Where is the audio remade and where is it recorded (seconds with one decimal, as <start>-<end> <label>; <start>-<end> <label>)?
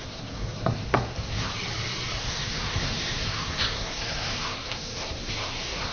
0.0-1.5 remade; 1.5-2.2 recorded; 2.2-5.9 remade